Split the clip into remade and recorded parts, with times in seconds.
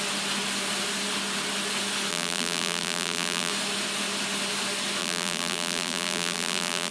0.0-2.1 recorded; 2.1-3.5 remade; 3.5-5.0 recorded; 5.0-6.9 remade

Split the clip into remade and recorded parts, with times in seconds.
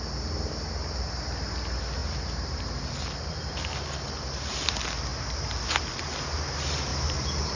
0.0-2.0 recorded; 2.0-2.6 remade; 2.6-6.9 recorded; 6.9-7.6 remade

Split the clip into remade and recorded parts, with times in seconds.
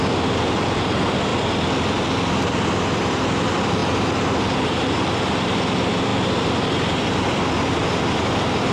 0.0-1.3 remade; 1.3-2.8 recorded; 2.8-3.8 remade; 3.8-4.4 recorded; 4.4-6.1 remade; 6.1-6.7 recorded; 6.7-8.7 remade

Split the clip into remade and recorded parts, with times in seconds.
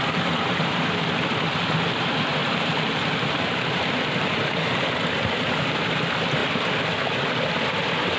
0.0-2.4 recorded; 2.4-4.9 remade; 4.9-8.2 recorded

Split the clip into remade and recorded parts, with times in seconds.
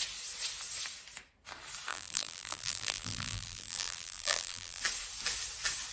0.0-1.9 recorded; 1.9-4.8 remade; 4.8-5.9 recorded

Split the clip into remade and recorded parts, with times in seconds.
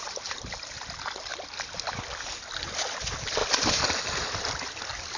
0.0-3.4 recorded; 3.4-4.7 remade; 4.7-5.2 recorded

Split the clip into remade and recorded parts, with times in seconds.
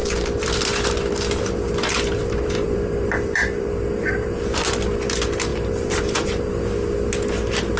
0.0-4.7 remade; 4.7-5.5 recorded; 5.5-6.7 remade; 6.7-7.8 recorded